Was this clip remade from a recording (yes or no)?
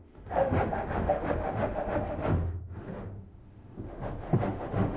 yes